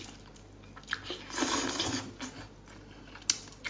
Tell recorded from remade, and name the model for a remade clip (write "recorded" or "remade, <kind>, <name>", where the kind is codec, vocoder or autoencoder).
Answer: recorded